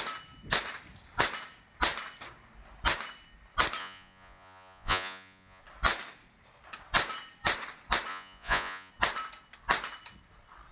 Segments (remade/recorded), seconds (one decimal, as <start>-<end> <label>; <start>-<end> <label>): 0.0-3.8 recorded; 3.8-5.6 remade; 5.6-8.1 recorded; 8.1-8.9 remade; 8.9-10.7 recorded